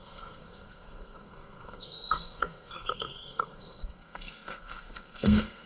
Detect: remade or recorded remade